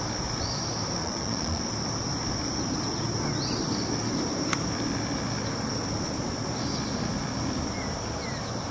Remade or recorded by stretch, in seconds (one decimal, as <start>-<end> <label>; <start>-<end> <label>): 0.0-1.0 recorded; 1.0-1.6 remade; 1.6-8.7 recorded